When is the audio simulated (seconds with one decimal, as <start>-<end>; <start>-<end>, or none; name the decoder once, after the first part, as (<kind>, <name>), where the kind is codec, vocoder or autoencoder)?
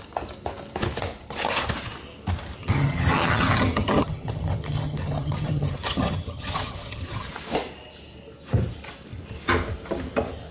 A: 2.6-7.3 (vocoder, HiFi-GAN)